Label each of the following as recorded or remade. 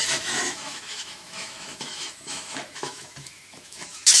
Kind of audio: remade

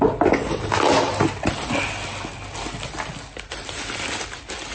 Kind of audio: recorded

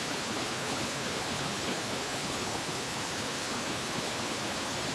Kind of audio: remade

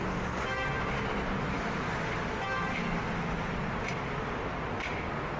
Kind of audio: recorded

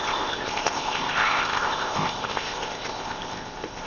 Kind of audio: remade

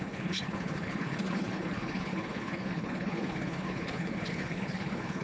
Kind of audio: remade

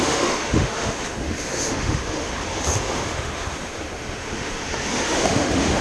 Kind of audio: remade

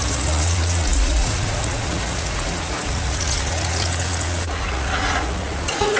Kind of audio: remade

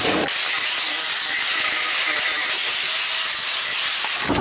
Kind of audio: recorded